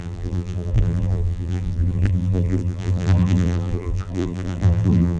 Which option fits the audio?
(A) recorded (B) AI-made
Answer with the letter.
B